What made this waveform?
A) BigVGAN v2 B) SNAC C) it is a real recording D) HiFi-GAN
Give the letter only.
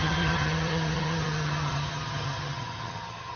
D